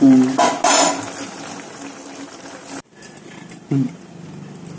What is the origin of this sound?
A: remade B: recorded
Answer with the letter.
B